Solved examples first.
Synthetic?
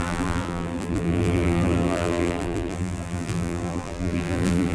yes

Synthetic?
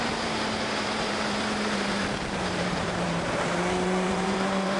yes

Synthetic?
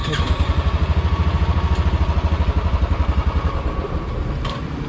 no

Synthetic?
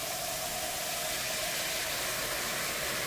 yes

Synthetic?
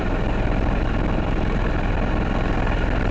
yes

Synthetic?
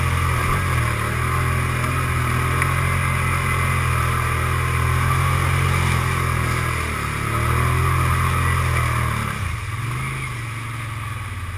no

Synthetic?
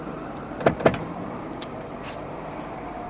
yes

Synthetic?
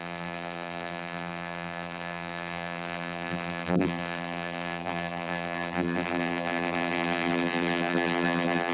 yes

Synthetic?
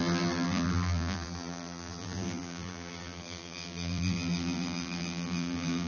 yes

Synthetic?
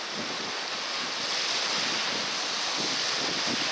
no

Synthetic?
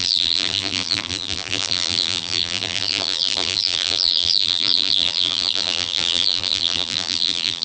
yes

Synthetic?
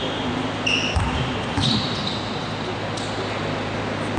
no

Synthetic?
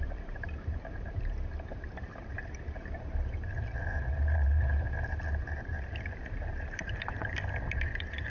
yes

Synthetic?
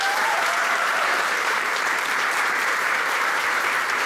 yes